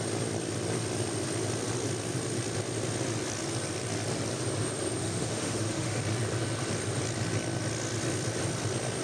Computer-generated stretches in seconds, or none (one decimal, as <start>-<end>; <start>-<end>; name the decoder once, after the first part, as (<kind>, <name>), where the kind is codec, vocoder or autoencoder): 5.0-6.0 (autoencoder, DAC-VAE)